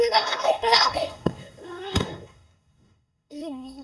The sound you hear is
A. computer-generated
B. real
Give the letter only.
A